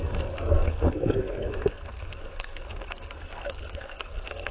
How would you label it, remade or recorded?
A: remade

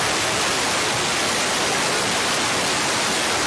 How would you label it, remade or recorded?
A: recorded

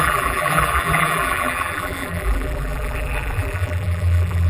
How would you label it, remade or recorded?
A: remade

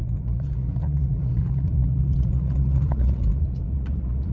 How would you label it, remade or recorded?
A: remade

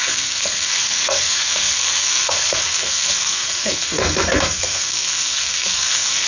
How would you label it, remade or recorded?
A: remade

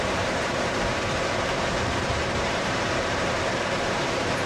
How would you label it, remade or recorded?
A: remade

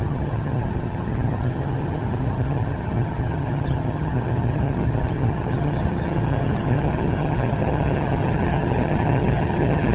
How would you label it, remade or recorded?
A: remade